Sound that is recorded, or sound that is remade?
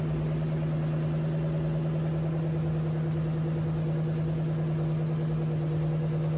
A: recorded